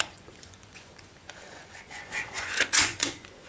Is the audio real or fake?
fake